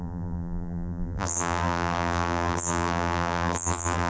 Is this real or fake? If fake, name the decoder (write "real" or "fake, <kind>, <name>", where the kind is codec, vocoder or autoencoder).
fake, vocoder, BigVGAN v2